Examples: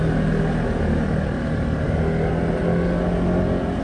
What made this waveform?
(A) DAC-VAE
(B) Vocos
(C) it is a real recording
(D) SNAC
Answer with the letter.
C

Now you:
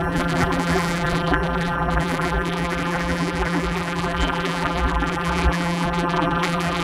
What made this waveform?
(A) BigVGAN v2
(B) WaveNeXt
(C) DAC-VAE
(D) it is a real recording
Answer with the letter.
A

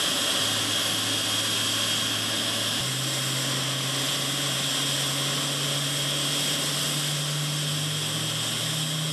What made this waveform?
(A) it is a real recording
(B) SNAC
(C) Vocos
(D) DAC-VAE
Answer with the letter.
A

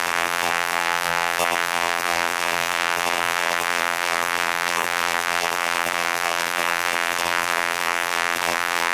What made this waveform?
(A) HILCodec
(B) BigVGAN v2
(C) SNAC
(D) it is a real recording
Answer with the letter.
B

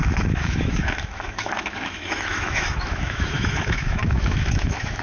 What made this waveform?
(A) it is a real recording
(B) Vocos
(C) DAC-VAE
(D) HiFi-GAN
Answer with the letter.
C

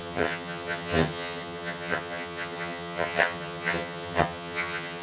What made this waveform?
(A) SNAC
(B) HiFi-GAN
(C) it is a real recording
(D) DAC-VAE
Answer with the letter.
B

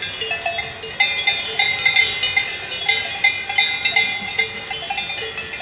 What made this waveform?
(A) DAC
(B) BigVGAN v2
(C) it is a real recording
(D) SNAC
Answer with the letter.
C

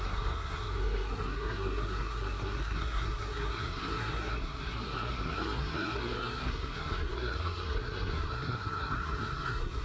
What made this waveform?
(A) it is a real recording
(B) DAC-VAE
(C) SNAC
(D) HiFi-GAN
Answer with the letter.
C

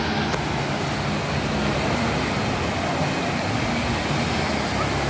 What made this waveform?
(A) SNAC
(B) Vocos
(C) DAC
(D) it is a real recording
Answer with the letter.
D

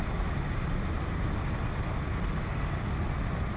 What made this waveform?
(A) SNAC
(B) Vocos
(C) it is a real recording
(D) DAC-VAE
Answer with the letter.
C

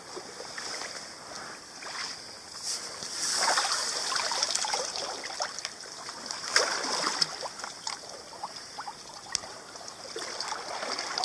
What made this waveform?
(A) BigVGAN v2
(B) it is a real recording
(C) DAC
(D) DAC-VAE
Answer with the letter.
B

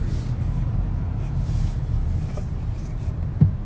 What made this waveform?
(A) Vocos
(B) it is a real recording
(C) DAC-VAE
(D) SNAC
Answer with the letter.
B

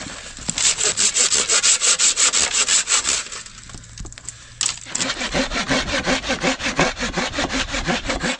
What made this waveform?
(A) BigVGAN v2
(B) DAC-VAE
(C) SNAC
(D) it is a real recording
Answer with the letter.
D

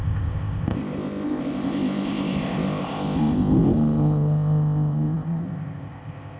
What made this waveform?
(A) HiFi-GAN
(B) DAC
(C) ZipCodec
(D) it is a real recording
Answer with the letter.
C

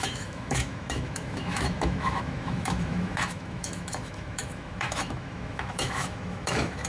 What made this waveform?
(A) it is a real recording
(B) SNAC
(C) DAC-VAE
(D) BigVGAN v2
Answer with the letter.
C